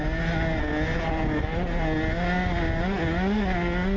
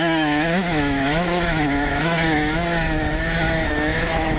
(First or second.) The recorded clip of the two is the first